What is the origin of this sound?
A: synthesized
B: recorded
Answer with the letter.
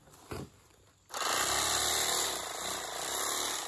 B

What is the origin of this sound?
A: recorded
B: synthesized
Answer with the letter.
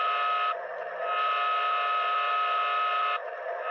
A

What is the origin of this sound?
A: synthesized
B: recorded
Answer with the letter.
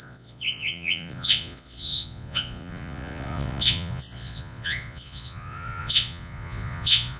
A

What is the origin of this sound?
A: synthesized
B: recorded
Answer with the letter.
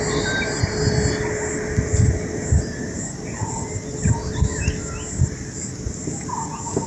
B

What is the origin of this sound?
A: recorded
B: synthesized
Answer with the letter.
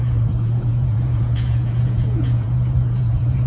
B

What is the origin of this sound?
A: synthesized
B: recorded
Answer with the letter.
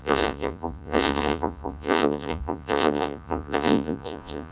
A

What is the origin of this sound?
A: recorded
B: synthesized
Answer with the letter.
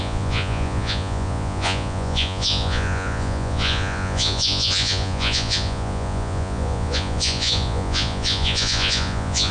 B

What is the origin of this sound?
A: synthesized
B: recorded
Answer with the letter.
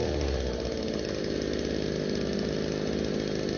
B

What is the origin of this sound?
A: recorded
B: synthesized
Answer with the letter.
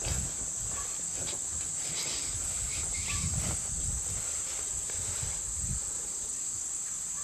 A